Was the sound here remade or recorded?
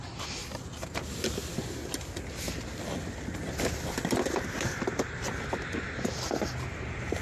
recorded